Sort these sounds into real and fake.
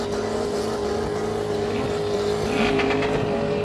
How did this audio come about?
real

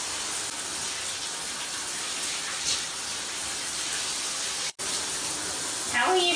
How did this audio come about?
real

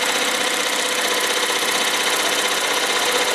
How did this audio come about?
real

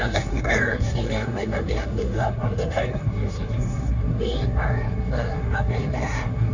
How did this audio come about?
fake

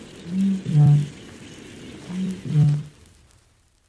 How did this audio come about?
real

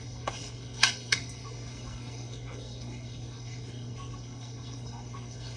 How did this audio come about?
fake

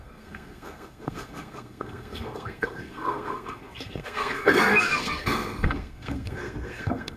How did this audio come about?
fake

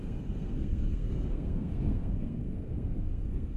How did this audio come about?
fake